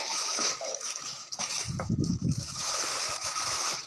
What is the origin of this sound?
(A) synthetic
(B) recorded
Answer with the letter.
A